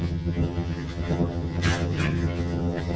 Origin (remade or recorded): remade